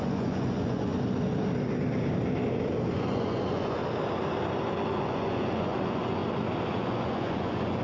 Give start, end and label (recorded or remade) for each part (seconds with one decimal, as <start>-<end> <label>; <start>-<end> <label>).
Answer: 0.0-0.9 remade; 0.9-2.9 recorded; 2.9-3.8 remade; 3.8-4.9 recorded; 4.9-6.2 remade; 6.2-6.7 recorded; 6.7-7.8 remade